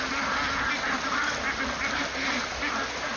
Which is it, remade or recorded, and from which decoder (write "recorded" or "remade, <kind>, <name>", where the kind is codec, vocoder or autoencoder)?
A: recorded